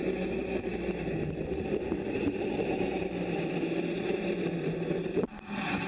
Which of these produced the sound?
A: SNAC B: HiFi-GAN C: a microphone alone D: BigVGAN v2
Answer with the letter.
C